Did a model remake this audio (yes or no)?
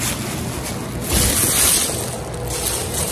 no